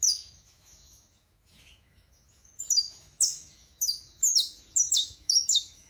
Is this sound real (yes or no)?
no